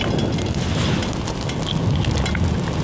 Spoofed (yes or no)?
no